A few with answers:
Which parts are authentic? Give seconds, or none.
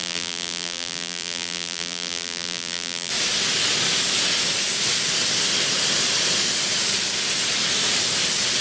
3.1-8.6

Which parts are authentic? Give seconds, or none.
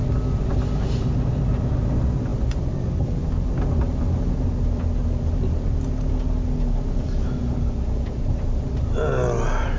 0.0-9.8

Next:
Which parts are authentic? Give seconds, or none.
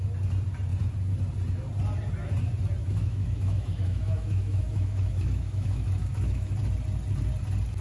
0.0-2.8; 6.5-7.8